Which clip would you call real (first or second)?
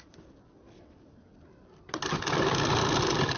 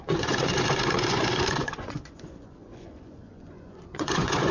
first